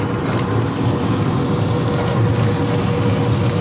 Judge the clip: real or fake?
real